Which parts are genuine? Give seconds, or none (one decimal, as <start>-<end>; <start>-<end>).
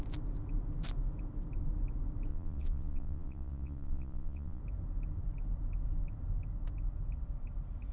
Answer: 0.0-2.3; 4.6-7.9